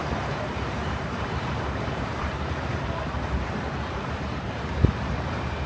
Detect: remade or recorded remade